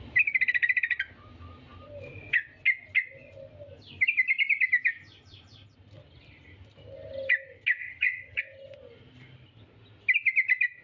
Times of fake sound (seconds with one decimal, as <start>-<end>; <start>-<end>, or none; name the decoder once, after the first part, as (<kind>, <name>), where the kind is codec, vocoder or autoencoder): 7.8-8.4 (vocoder, HiFi-GAN)